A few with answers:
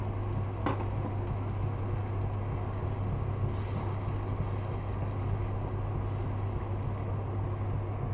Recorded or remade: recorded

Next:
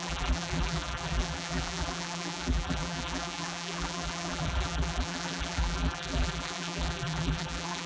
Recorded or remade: remade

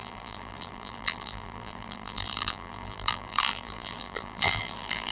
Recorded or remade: remade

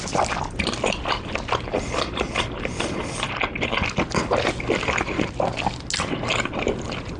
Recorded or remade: recorded